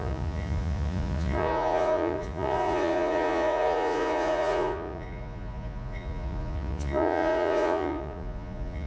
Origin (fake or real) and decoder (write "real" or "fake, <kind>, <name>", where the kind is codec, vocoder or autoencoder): fake, vocoder, Vocos